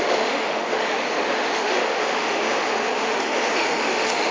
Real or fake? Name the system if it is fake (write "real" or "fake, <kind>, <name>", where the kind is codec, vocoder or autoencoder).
fake, autoencoder, DAC-VAE